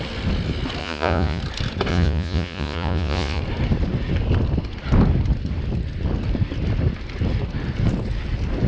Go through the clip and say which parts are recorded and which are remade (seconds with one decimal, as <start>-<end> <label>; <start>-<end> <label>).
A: 0.0-0.8 recorded; 0.8-1.4 remade; 1.4-1.9 recorded; 1.9-3.4 remade; 3.4-8.7 recorded